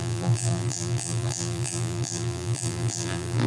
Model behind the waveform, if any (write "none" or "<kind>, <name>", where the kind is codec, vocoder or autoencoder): vocoder, BigVGAN v2